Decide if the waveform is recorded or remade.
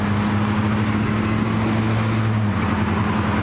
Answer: recorded